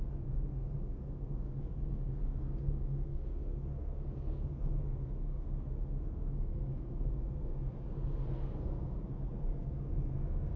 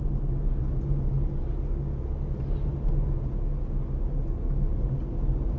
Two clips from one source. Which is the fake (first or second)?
first